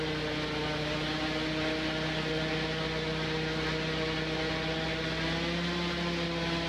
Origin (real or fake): real